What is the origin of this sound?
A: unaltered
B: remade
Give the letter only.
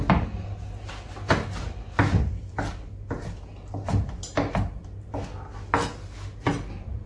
A